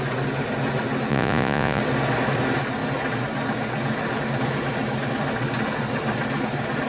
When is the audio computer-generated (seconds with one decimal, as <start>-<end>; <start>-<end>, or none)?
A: 1.1-1.8

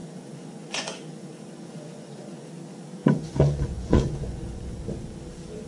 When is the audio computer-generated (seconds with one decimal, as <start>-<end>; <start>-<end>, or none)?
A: 0.0-2.5; 3.0-4.8